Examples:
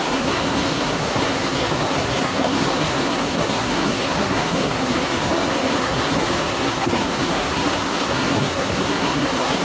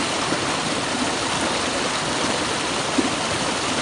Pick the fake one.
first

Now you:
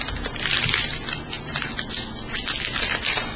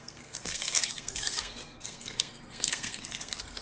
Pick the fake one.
second